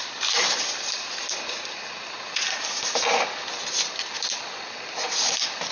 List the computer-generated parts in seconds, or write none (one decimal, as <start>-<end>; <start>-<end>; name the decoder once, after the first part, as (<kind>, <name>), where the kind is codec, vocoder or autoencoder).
0.0-1.3 (vocoder, BigVGAN v2)